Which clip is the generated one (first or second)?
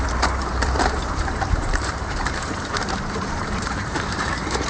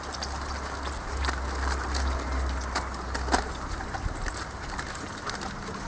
first